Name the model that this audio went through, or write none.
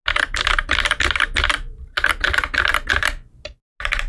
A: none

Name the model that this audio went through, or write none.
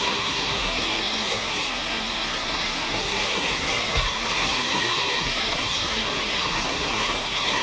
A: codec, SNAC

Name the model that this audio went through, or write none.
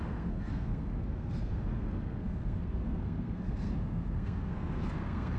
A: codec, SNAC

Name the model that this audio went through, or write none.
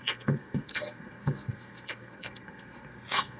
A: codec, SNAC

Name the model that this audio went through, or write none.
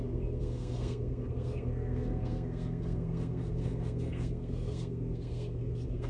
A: codec, SNAC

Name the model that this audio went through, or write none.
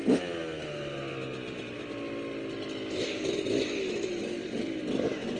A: none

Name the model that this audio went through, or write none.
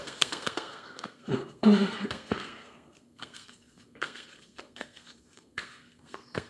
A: codec, SNAC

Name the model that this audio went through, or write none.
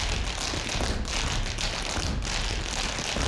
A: none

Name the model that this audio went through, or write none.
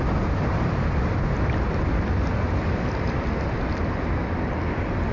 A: none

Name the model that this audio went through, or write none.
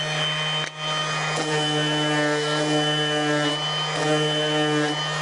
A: none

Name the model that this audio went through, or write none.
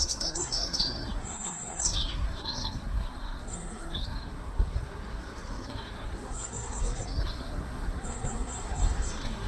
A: codec, SNAC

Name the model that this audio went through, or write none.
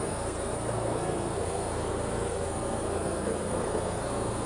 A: codec, SNAC